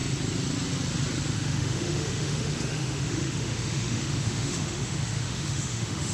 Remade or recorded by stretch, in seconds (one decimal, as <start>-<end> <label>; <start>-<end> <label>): 0.0-1.3 recorded; 1.3-6.1 remade